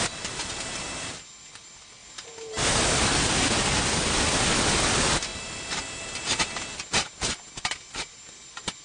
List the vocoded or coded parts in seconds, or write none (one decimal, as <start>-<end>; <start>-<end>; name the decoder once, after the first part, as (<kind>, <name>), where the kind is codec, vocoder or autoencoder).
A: none